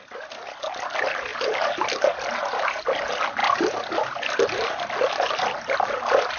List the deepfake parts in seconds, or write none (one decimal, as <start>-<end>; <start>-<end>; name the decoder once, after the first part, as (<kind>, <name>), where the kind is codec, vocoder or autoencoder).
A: none